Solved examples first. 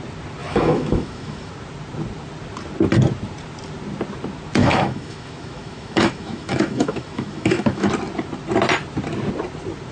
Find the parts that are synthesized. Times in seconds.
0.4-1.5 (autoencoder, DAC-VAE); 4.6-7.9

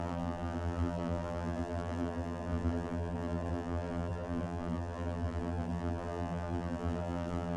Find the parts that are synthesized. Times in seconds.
0.0-7.6 (vocoder, BigVGAN v2)

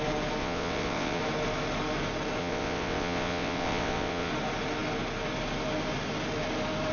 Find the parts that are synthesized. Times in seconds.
0.4-1.2 (vocoder, WaveNeXt); 2.4-4.3

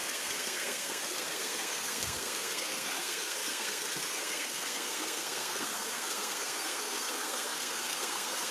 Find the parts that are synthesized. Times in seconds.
0.0-8.5 (codec, SNAC)

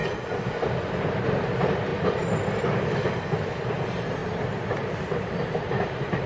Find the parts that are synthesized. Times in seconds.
0.9-1.9 (vocoder, BigVGAN v2); 3.4-6.3

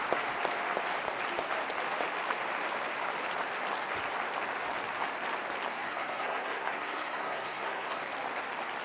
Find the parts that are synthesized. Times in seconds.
5.7-8.0 (codec, SNAC)

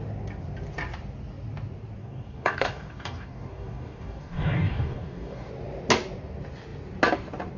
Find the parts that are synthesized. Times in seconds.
2.0-5.5 (codec, DAC)